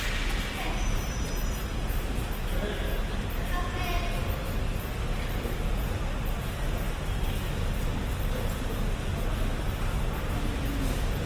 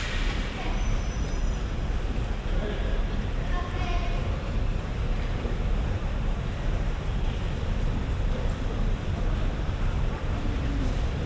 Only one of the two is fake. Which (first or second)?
second